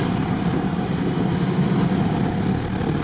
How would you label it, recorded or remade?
recorded